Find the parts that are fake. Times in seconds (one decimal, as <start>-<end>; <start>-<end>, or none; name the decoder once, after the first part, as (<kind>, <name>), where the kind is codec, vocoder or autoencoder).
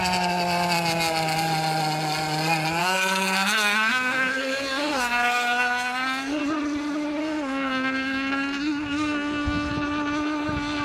2.8-6.4 (codec, SNAC); 7.2-9.7